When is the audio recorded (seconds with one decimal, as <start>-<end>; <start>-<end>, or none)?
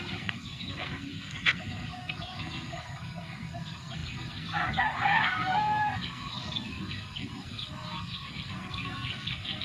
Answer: none